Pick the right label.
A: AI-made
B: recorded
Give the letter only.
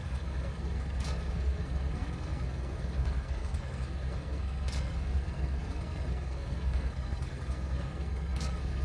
A